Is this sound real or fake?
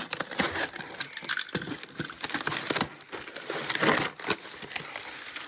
real